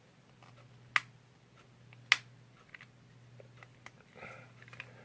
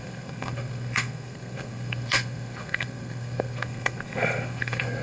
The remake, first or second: second